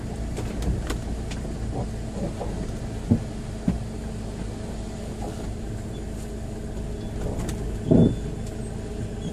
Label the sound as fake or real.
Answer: real